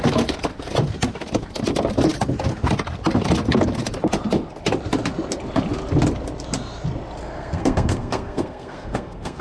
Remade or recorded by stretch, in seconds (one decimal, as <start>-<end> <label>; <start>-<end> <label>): 0.0-7.2 recorded; 7.2-9.4 remade